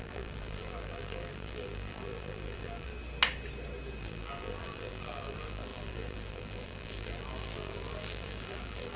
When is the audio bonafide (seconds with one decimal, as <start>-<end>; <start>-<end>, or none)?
2.9-4.0